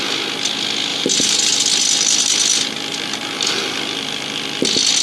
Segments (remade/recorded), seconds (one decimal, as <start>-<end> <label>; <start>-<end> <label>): 0.0-0.9 recorded; 0.9-1.6 remade; 1.6-5.0 recorded